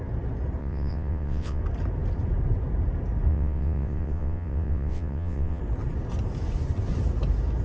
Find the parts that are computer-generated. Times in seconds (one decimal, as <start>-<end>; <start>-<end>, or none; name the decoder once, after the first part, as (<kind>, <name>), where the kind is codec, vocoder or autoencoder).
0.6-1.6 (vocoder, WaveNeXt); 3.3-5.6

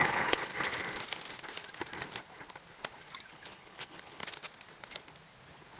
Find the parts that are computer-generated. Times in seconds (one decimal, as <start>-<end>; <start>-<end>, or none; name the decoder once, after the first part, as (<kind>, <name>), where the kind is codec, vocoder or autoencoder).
0.0-0.5 (codec, HILCodec); 3.3-4.2

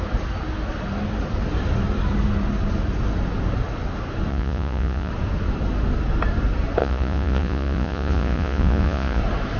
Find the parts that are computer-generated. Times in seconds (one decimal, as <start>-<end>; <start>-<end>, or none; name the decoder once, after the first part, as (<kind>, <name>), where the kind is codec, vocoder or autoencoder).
4.3-5.1 (vocoder, Vocos); 6.8-9.2